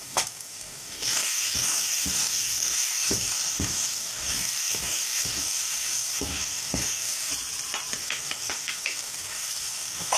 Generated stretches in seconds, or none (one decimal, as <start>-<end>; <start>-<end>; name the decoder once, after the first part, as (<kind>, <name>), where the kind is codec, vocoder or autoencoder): 0.0-7.3 (codec, DAC); 8.0-10.2